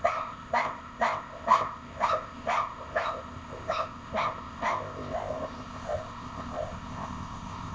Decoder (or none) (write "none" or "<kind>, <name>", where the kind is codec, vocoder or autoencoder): codec, ZipCodec